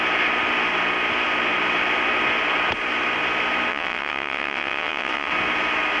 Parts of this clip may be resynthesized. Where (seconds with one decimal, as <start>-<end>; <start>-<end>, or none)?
3.7-5.3